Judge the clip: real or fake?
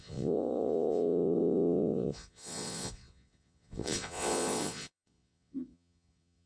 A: fake